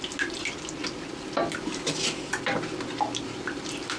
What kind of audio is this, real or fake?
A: real